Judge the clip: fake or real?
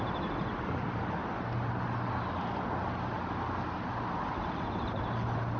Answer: real